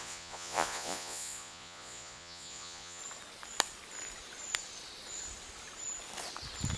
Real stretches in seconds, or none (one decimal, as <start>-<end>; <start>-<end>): 3.0-6.8